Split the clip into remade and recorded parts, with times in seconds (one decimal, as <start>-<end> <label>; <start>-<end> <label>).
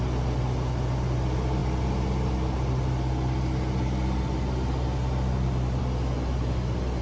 0.0-7.0 recorded